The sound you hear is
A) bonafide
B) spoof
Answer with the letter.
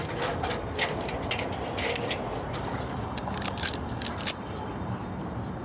A